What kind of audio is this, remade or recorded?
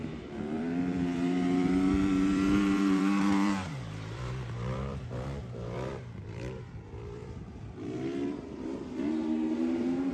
remade